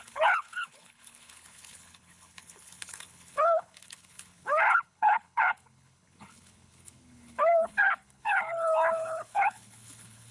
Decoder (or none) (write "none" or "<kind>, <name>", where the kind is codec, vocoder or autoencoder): codec, HILCodec